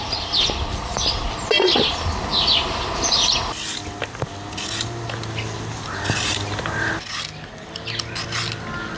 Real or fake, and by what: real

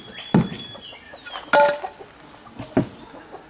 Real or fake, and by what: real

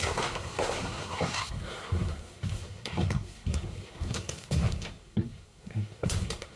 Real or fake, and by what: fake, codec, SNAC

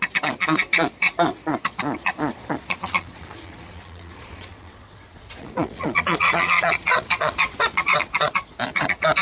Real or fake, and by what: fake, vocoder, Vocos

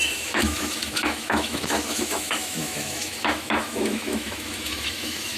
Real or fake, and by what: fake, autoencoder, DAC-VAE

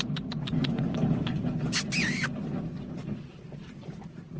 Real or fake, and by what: real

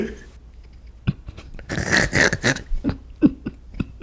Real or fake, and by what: real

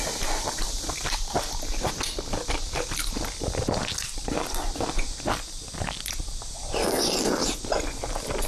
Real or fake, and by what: real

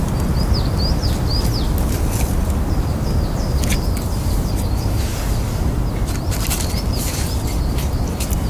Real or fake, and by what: real